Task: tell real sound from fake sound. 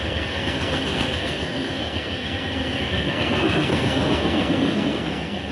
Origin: fake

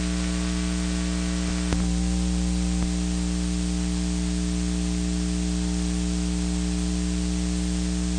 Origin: real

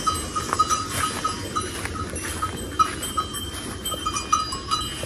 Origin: real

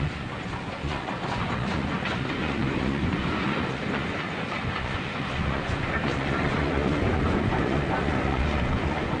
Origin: fake